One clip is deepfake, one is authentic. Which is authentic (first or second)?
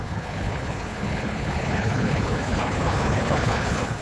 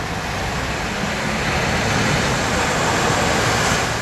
second